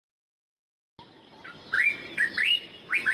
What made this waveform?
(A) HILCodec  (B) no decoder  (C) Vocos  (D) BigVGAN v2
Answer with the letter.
B